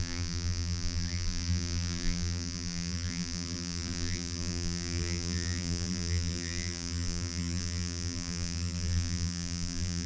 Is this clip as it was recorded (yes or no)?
no